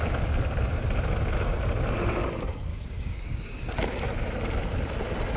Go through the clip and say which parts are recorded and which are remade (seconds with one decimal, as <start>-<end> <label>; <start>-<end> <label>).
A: 0.0-2.7 recorded; 2.7-3.7 remade; 3.7-5.4 recorded